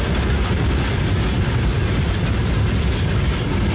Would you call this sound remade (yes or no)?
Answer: no